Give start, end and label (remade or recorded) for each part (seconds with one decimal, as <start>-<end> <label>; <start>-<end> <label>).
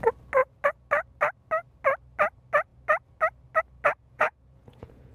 0.0-4.0 recorded; 4.0-5.1 remade